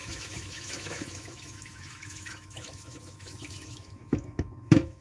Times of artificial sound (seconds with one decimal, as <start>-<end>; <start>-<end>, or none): 0.0-5.0